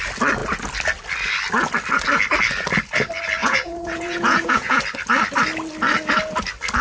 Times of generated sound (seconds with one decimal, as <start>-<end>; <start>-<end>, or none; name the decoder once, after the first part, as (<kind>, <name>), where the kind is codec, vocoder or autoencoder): 3.4-4.8 (vocoder, Vocos)